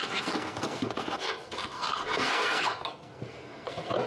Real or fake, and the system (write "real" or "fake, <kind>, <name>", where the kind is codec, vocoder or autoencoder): fake, codec, SNAC